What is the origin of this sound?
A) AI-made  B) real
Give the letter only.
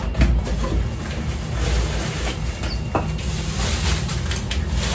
B